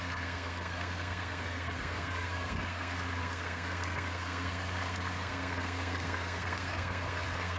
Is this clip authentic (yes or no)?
no